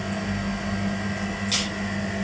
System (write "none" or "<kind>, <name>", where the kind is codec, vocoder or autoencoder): none